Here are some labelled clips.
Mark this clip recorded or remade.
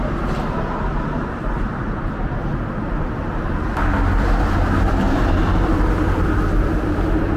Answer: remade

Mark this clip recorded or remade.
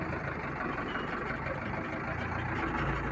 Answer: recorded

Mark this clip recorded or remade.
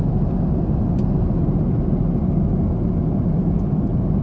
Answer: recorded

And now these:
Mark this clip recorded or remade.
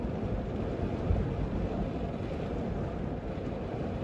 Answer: remade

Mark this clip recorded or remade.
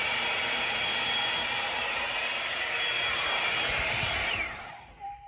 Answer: remade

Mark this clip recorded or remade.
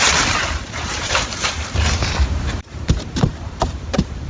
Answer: remade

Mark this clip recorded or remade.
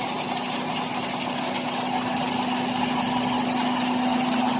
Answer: recorded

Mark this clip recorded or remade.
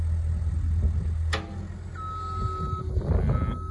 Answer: recorded